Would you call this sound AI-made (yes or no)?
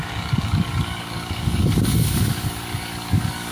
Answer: yes